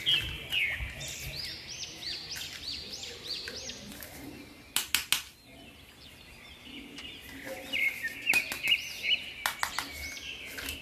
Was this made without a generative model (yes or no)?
yes